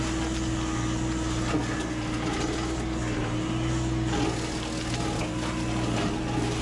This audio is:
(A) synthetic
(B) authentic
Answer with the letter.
B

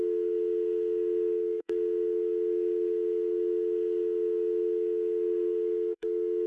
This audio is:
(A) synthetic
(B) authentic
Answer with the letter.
A